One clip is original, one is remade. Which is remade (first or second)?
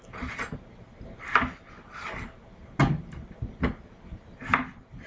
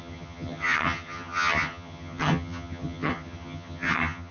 second